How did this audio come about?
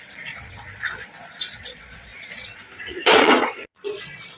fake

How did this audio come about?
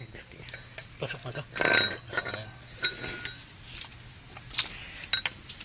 real